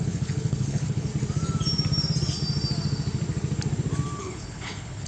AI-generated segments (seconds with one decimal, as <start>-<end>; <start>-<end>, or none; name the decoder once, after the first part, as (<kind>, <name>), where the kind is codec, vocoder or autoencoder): 0.0-1.1 (codec, HILCodec); 4.2-5.1